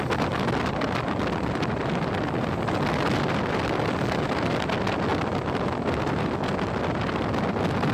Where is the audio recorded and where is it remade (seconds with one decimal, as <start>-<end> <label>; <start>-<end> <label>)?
0.0-7.9 recorded